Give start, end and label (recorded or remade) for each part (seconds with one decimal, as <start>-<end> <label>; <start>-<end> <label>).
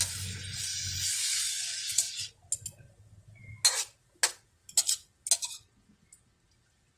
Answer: 0.0-0.7 recorded; 0.7-2.3 remade; 2.3-7.0 recorded